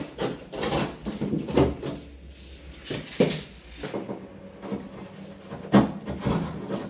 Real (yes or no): yes